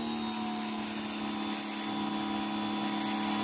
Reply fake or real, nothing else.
real